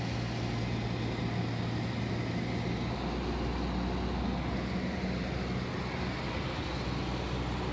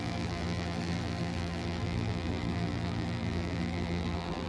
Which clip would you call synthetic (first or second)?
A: second